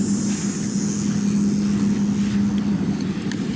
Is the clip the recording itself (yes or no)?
yes